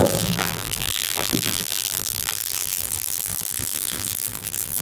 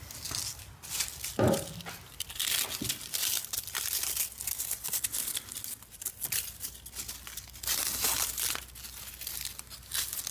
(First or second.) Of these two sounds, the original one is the second